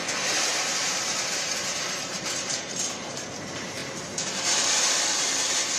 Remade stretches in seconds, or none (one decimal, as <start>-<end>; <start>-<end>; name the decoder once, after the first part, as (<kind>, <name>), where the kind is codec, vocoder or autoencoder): 0.5-2.7 (vocoder, BigVGAN v2)